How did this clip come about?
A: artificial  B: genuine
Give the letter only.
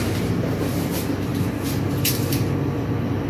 B